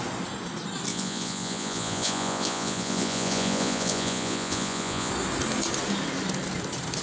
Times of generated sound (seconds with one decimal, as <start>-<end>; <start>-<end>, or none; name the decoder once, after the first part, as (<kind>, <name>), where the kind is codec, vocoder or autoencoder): 0.9-5.1 (vocoder, Vocos)